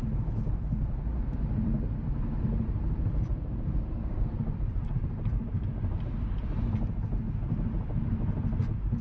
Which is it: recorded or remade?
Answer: remade